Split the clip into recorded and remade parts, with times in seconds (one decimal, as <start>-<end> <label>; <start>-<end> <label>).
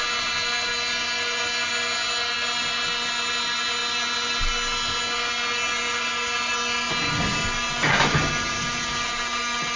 0.0-9.8 recorded